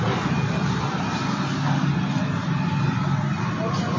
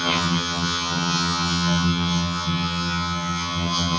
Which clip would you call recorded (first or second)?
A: first